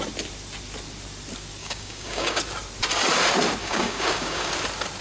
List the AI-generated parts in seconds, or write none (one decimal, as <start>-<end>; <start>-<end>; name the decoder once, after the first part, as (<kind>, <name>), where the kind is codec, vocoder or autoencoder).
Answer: 1.6-2.4 (codec, DAC); 3.6-4.5